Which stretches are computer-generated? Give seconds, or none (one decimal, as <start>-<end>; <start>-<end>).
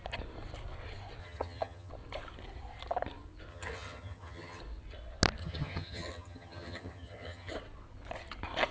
1.2-1.9; 3.5-4.6; 5.4-7.5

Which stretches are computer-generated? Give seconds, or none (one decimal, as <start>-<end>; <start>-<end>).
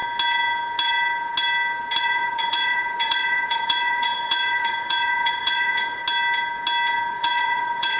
2.0-6.0; 7.1-8.0